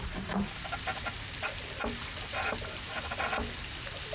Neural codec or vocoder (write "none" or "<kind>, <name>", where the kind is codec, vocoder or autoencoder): none